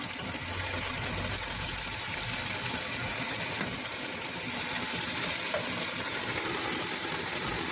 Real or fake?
real